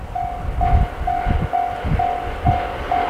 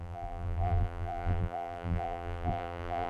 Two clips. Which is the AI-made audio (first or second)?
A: second